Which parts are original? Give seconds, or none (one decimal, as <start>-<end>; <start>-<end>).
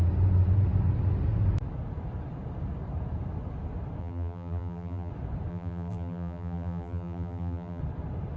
0.0-4.0; 5.1-5.5; 7.8-8.4